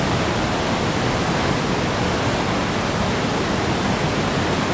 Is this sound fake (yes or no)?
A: no